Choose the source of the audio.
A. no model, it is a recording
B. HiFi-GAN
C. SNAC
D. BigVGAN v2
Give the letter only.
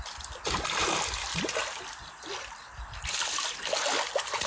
A